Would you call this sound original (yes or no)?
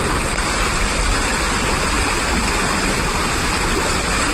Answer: yes